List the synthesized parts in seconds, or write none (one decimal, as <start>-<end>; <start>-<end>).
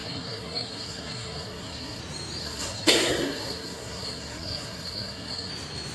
0.0-2.0; 2.4-5.5